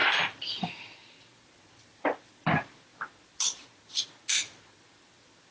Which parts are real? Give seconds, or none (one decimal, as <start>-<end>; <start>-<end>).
0.0-5.5